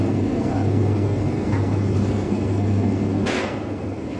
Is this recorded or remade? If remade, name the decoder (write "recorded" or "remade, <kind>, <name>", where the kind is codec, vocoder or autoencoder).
remade, codec, SNAC